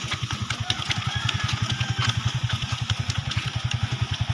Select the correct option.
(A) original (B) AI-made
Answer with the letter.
B